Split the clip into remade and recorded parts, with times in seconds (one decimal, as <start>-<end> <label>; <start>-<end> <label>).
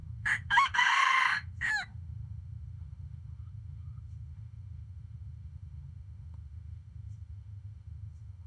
0.0-8.5 remade